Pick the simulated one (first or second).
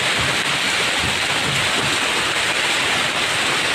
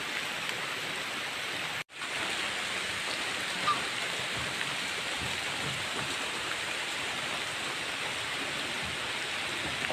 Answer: second